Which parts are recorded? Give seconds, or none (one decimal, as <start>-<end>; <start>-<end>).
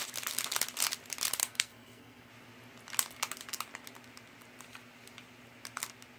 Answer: 0.0-1.4; 2.3-6.2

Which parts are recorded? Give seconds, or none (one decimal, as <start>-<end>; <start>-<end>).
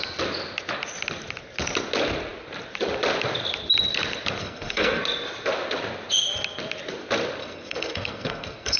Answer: 0.0-4.4; 5.0-7.4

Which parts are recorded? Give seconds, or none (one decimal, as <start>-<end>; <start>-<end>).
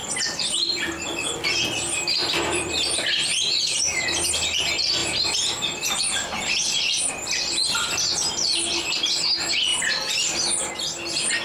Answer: 4.3-5.0; 7.1-9.7; 10.7-11.4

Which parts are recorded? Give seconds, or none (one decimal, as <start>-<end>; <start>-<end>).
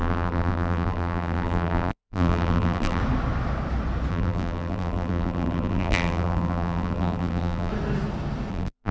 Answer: 3.0-4.1; 7.7-8.5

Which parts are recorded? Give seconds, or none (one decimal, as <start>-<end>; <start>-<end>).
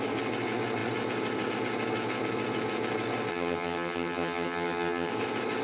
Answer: 0.0-3.3; 5.1-5.6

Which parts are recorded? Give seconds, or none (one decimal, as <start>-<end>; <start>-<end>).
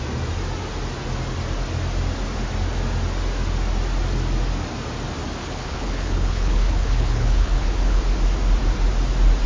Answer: 0.0-5.4; 8.0-9.5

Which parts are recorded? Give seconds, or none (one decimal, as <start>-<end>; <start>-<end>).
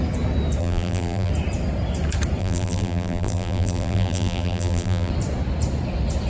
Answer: 0.0-0.6; 1.3-2.4; 5.1-6.3